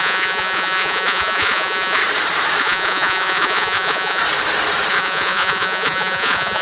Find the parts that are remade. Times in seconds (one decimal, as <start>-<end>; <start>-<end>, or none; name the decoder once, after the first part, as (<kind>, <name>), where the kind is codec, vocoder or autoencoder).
0.0-2.0 (vocoder, Vocos); 2.6-4.2; 4.9-6.6